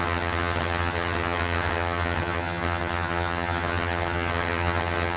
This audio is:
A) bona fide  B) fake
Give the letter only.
B